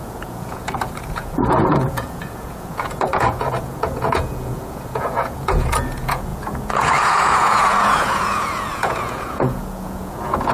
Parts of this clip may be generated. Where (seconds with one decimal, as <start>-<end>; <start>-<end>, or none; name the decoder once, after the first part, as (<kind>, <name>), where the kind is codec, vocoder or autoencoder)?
0.0-10.5 (vocoder, Vocos)